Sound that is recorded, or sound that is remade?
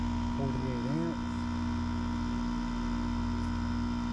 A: recorded